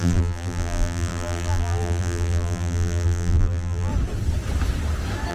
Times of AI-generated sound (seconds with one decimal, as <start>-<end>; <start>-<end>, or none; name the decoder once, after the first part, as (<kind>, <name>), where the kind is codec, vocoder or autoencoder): 0.0-3.9 (vocoder, BigVGAN v2)